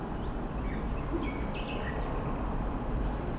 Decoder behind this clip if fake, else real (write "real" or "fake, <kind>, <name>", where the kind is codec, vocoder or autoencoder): real